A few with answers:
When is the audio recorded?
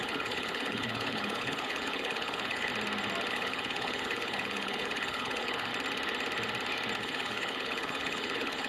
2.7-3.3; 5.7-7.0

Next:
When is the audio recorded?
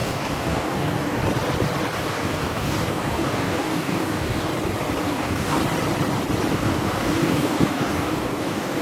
1.2-2.0; 4.5-5.0; 5.6-6.5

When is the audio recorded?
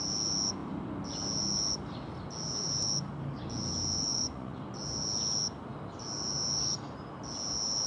0.0-4.1; 4.6-7.9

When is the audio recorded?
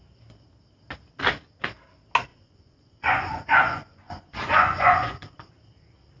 0.0-2.3; 5.5-6.2